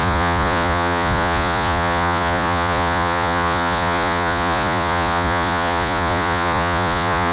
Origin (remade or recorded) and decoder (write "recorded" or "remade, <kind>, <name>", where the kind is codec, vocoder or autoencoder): remade, vocoder, Vocos